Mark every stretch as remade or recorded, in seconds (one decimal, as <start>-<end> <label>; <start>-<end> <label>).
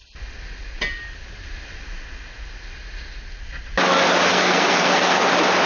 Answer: 0.0-4.3 recorded; 4.3-5.3 remade; 5.3-5.7 recorded